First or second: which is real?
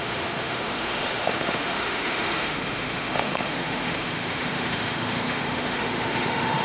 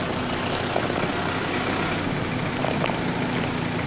second